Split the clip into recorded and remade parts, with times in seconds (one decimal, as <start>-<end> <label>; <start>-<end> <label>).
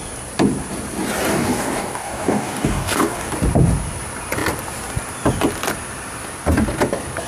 0.0-1.3 recorded; 1.3-3.3 remade; 3.3-7.3 recorded